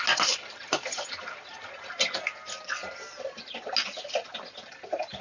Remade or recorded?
recorded